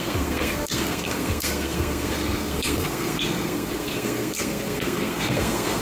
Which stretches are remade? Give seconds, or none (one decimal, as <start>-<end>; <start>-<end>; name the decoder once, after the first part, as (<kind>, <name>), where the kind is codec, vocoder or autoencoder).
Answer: 0.0-5.8 (codec, SNAC)